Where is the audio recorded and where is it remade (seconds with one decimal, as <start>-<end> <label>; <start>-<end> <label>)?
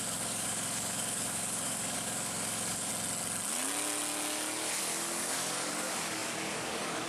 0.0-2.9 remade; 2.9-4.8 recorded; 4.8-7.1 remade